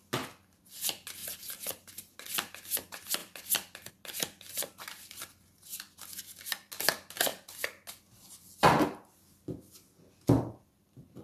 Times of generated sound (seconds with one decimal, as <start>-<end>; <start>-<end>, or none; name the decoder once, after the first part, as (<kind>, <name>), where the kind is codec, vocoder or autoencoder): 1.2-1.9 (vocoder, BigVGAN v2)